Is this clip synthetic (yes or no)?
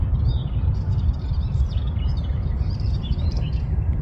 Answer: yes